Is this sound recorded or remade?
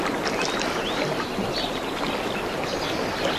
recorded